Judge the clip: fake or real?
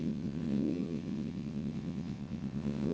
fake